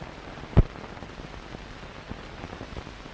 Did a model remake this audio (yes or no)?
no